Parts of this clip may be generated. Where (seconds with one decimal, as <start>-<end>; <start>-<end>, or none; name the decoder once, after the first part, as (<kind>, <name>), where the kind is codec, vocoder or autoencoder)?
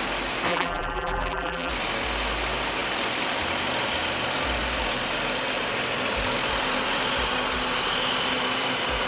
0.5-1.7 (vocoder, BigVGAN v2)